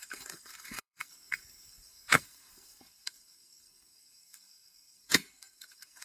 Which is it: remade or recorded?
remade